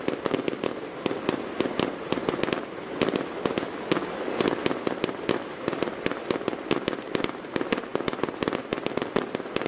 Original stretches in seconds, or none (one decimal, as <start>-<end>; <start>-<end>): 0.0-9.7